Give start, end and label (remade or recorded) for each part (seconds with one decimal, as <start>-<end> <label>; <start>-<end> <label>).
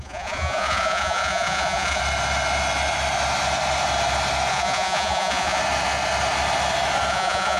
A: 0.0-2.0 remade; 2.0-4.5 recorded; 4.5-5.6 remade; 5.6-7.1 recorded; 7.1-7.6 remade